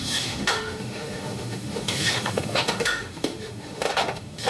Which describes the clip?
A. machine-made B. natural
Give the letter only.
A